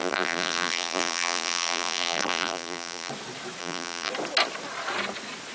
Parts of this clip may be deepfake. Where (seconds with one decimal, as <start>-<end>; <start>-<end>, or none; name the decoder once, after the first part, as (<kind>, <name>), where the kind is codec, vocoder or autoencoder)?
0.0-3.1 (vocoder, BigVGAN v2); 3.6-4.1